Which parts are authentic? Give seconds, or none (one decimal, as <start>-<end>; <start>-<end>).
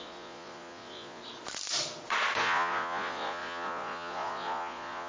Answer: 1.2-2.4